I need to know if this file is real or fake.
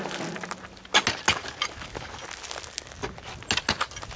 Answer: real